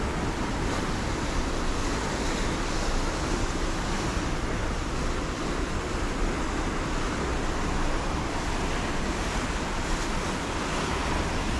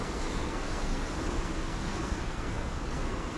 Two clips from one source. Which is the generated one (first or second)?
second